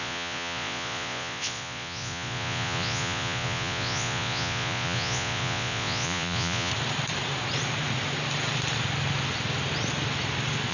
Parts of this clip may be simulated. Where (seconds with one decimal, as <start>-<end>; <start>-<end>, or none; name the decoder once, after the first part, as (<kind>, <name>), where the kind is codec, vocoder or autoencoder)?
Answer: 0.0-6.7 (vocoder, Vocos)